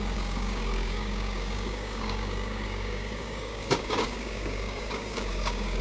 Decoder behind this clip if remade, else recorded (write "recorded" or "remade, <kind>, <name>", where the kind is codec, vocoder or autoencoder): remade, codec, DAC